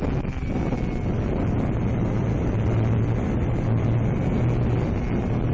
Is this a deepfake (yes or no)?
no